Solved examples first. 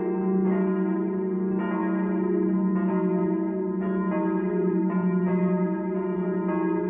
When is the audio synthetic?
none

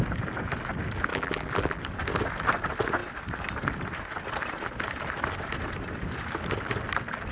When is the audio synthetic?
1.1-1.8 (vocoder, BigVGAN v2)

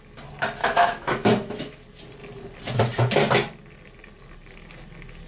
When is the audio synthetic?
0.6-1.8 (autoencoder, DAC-VAE)

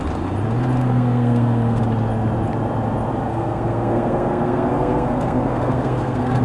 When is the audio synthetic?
0.8-1.8 (codec, SNAC); 3.3-6.4

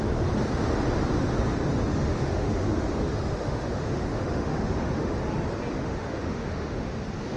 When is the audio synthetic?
1.9-5.1 (autoencoder, DAC-VAE); 5.8-6.9

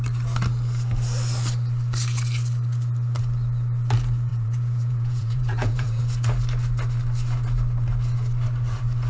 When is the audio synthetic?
4.3-6.0 (vocoder, Vocos)

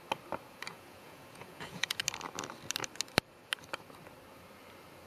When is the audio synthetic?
0.7-2.0 (vocoder, Vocos)

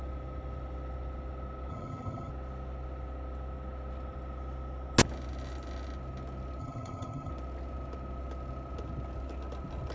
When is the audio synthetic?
1.7-2.3 (vocoder, HiFi-GAN); 6.6-7.3